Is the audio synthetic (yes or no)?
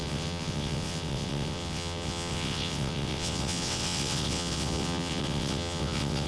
yes